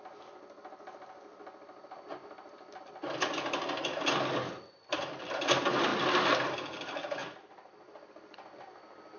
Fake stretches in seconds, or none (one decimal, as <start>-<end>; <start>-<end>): none